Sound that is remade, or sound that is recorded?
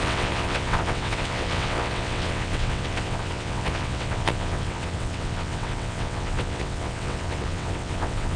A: remade